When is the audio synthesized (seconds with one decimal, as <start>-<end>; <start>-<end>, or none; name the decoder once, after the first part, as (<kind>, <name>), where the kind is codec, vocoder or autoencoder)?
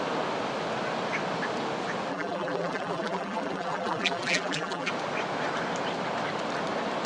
2.1-4.9 (vocoder, BigVGAN v2)